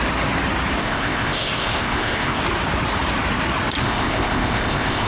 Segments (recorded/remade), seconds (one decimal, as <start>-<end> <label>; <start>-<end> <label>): 0.0-0.8 recorded; 0.8-2.4 remade; 2.4-3.8 recorded; 3.8-5.1 remade